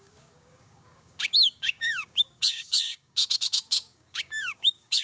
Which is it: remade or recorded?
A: remade